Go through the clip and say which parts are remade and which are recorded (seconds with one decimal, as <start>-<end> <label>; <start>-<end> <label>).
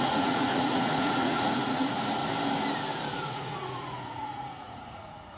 0.0-2.2 remade; 2.2-3.2 recorded; 3.2-5.4 remade